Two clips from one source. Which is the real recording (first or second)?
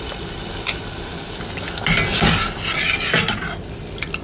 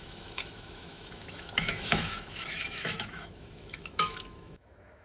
first